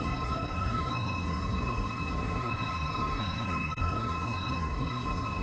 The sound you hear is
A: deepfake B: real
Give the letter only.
A